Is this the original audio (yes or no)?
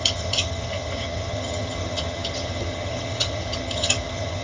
no